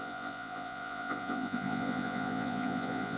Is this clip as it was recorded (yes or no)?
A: no